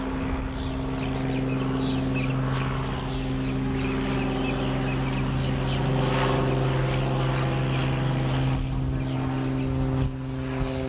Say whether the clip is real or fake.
real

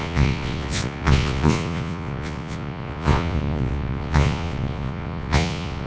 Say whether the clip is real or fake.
fake